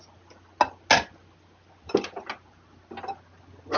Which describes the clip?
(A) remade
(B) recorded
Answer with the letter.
B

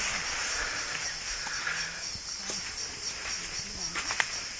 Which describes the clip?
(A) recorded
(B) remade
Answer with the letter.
A